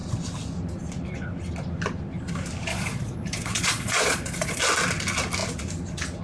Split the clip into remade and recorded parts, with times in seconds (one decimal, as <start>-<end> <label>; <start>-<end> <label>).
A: 0.0-2.7 recorded; 2.7-4.6 remade; 4.6-6.2 recorded